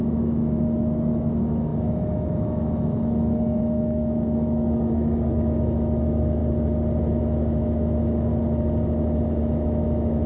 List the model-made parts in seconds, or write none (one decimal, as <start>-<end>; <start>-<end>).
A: 0.0-6.4; 7.2-8.3; 9.4-10.3